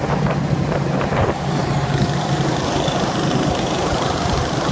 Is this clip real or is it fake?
fake